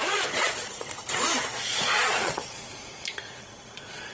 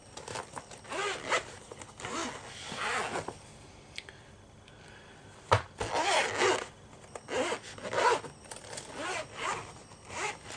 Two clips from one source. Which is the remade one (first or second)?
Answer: first